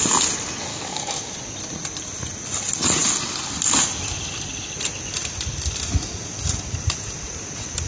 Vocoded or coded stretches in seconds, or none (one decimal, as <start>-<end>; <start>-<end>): 0.7-1.3